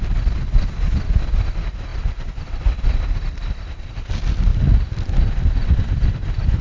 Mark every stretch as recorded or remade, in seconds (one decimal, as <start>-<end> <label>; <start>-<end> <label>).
0.0-6.6 recorded